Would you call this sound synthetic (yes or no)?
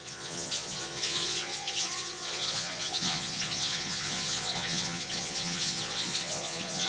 yes